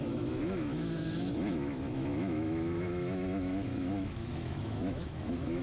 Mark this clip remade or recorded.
remade